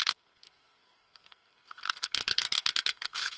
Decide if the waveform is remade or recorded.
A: remade